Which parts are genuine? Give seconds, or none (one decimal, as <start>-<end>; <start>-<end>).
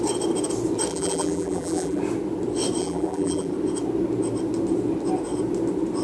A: 0.0-0.9; 2.0-2.8; 3.5-6.0